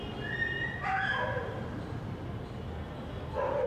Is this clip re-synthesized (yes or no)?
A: no